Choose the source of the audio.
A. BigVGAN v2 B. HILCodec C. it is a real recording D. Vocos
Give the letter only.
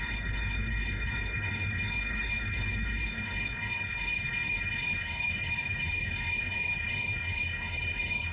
B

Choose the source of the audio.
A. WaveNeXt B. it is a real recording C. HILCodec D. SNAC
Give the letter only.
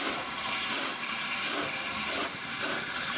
B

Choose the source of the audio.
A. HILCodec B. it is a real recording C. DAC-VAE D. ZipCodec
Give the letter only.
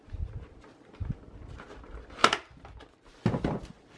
B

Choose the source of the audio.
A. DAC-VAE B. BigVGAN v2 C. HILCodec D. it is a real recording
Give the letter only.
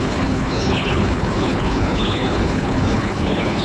C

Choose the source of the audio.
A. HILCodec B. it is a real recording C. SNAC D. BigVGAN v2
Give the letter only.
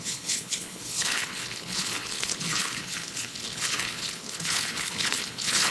A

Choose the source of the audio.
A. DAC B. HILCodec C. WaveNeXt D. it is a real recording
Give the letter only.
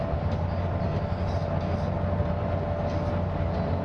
D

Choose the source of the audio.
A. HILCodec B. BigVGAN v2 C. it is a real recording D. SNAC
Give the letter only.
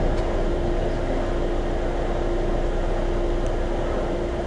C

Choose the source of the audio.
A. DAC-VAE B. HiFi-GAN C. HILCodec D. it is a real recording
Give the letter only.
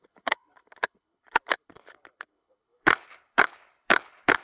C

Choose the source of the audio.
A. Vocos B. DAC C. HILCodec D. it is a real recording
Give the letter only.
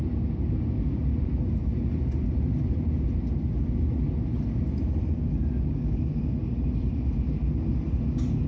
D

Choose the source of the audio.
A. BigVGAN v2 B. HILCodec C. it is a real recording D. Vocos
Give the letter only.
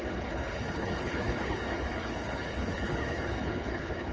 B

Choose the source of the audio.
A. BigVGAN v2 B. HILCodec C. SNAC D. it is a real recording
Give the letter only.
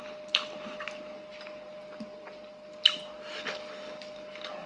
D